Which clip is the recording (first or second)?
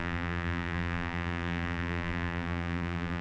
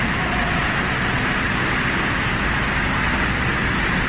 second